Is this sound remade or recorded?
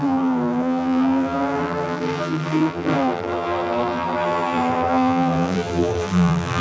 remade